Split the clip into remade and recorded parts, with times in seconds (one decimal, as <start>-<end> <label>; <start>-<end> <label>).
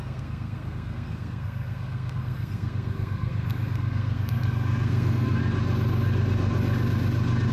0.0-5.4 remade; 5.4-7.5 recorded